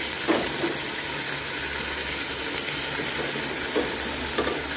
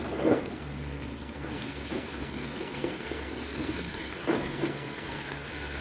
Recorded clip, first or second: first